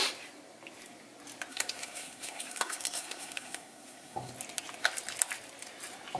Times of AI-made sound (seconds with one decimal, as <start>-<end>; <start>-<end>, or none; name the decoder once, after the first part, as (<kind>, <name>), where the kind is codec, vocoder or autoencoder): 1.5-4.3 (codec, SNAC)